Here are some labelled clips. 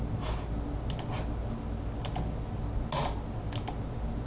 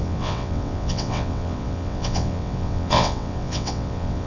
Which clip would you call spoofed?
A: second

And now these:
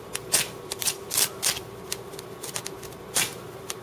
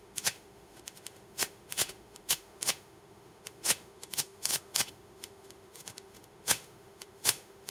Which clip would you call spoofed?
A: second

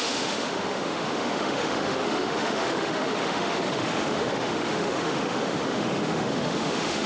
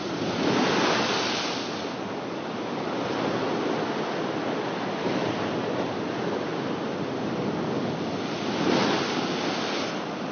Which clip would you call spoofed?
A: first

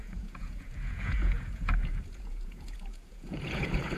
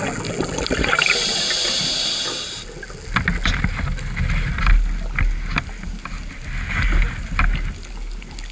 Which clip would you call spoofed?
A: first